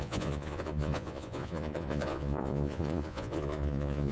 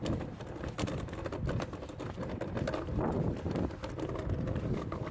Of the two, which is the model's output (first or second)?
first